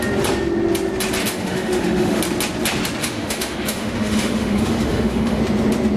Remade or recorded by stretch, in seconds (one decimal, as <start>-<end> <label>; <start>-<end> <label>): 0.0-1.2 recorded; 1.2-2.2 remade; 2.2-3.0 recorded; 3.0-5.4 remade; 5.4-6.0 recorded

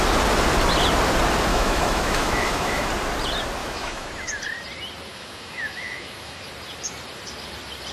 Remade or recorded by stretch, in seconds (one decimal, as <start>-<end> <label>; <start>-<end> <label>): 0.0-1.5 recorded; 1.5-2.9 remade; 2.9-3.6 recorded; 3.6-4.1 remade; 4.1-5.1 recorded; 5.1-6.5 remade; 6.5-7.9 recorded